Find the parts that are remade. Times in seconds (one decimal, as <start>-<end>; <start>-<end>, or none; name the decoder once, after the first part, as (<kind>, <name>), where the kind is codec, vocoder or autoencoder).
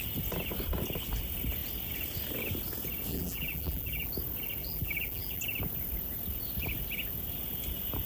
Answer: 3.1-4.1 (vocoder, BigVGAN v2); 4.6-5.4